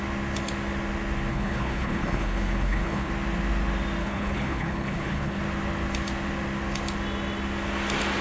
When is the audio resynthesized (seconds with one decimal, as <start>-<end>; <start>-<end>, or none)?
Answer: 1.3-3.1; 4.0-5.4